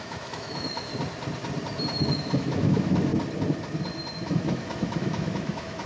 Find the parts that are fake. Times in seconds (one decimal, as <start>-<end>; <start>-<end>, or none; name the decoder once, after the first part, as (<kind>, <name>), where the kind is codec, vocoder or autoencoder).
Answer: 0.0-0.9 (autoencoder, DAC-VAE); 2.0-3.1; 4.2-5.9